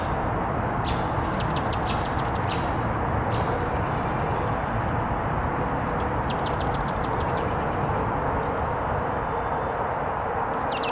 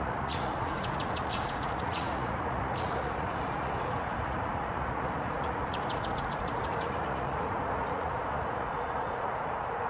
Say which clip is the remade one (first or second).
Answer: second